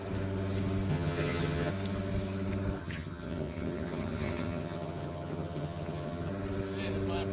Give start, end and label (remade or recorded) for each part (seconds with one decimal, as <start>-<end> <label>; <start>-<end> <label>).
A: 0.0-0.9 recorded; 0.9-1.7 remade; 1.7-2.8 recorded; 2.8-6.3 remade; 6.3-7.3 recorded